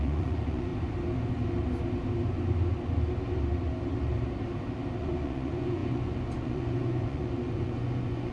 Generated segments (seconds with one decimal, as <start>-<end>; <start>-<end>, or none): 0.0-0.7; 5.0-8.3